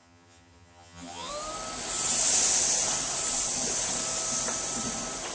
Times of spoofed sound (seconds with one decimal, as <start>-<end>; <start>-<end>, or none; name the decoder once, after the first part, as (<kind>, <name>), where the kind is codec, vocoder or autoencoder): 0.0-1.3 (vocoder, HiFi-GAN)